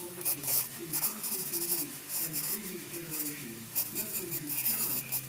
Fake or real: fake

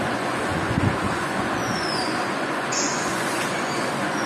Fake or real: fake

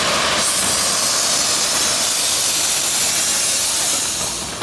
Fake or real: real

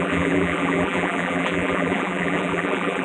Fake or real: fake